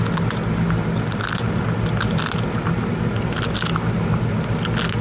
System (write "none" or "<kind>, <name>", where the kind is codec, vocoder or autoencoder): none